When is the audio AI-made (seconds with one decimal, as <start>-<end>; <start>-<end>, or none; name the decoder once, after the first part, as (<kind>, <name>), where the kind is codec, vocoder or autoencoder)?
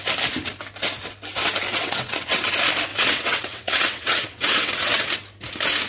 1.7-2.4 (vocoder, WaveNeXt); 2.9-5.1